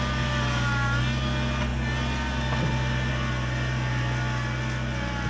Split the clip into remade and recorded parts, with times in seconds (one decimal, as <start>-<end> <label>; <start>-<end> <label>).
0.0-5.3 recorded